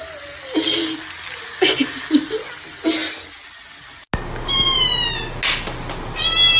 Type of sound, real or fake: real